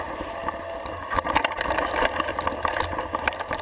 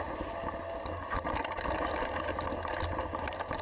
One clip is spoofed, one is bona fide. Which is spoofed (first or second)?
first